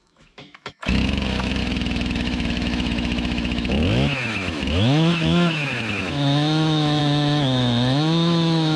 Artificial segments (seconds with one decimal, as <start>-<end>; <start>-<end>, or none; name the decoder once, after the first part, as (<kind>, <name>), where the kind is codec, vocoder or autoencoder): 0.0-8.8 (autoencoder, DAC-VAE)

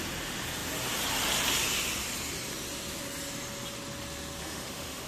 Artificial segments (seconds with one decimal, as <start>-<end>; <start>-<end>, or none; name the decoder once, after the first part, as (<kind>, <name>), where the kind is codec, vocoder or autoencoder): 4.4-5.1 (autoencoder, DAC-VAE)

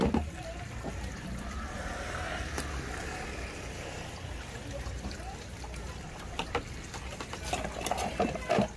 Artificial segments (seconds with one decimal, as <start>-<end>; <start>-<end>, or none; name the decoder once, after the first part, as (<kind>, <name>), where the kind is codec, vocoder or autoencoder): none

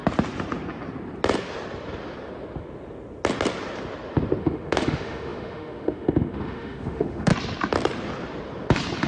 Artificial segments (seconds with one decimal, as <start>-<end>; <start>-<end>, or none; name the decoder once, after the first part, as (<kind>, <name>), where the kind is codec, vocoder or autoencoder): 4.4-7.3 (autoencoder, DAC-VAE)

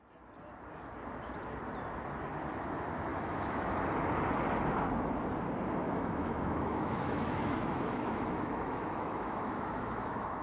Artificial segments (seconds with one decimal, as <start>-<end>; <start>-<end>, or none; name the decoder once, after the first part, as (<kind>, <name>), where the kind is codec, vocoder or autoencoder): 3.1-3.7 (autoencoder, DAC-VAE); 5.8-10.4

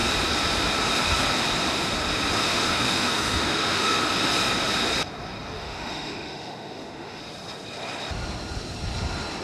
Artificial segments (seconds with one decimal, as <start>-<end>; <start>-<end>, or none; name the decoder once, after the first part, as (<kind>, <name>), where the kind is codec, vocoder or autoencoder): 2.4-4.0 (autoencoder, DAC-VAE); 5.6-7.2